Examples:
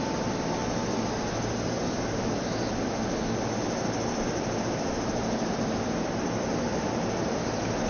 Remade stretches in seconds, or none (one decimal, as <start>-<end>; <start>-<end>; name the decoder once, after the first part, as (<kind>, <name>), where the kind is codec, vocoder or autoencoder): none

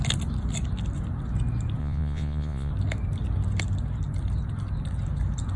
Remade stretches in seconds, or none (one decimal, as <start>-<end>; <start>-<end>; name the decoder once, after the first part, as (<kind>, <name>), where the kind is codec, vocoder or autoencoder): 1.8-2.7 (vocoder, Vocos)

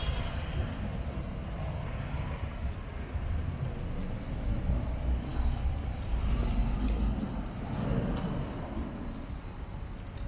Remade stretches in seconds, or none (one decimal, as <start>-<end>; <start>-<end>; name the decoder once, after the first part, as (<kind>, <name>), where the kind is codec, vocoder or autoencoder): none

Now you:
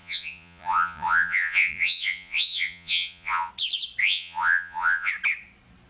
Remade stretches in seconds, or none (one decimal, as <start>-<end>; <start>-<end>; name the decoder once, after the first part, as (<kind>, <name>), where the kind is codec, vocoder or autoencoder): 0.0-3.5 (vocoder, Vocos); 4.0-5.1